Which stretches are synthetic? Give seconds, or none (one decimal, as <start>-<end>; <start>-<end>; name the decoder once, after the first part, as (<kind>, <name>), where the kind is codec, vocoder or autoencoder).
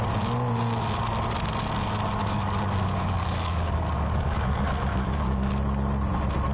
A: 2.2-5.5 (codec, DAC)